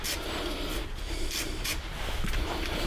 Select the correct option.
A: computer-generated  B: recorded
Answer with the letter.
B